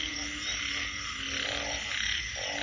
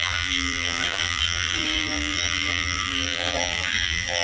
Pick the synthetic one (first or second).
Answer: second